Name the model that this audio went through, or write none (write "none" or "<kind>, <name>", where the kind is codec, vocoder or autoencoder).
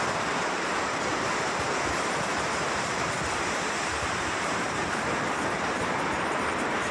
vocoder, BigVGAN v2